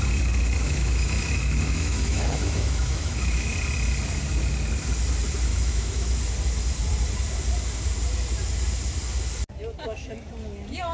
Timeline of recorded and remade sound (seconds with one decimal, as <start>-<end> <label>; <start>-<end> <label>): 0.0-0.6 recorded; 0.6-3.5 remade; 3.5-5.5 recorded; 5.5-6.1 remade; 6.1-9.8 recorded; 9.8-10.3 remade; 10.3-10.9 recorded